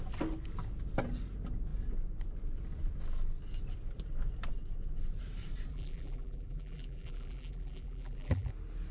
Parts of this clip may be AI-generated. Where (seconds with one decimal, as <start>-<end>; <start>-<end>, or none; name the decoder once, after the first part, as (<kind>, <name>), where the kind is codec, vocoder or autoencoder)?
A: 5.7-8.5 (vocoder, BigVGAN v2)